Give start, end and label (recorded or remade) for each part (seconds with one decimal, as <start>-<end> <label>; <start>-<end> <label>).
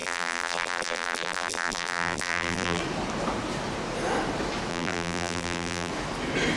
0.0-2.8 remade; 2.8-4.7 recorded; 4.7-5.9 remade; 5.9-6.6 recorded